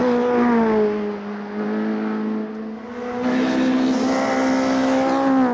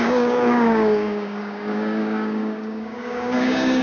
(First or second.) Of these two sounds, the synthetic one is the second